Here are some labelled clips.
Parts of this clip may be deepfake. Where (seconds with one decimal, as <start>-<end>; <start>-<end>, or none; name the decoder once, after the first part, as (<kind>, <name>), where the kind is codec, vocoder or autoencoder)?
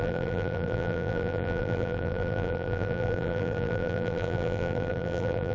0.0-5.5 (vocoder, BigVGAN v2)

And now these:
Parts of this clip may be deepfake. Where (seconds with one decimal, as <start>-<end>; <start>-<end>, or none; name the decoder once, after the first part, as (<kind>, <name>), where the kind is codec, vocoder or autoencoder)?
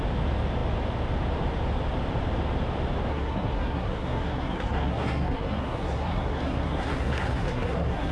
3.1-8.1 (codec, SNAC)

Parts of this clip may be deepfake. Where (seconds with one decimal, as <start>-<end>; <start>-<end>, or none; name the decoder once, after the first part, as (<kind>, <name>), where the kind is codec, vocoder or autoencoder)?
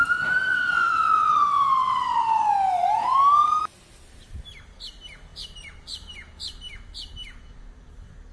0.5-2.5 (vocoder, WaveNeXt)